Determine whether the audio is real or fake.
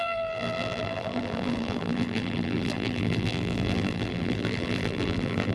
fake